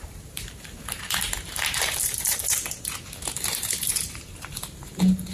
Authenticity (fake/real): fake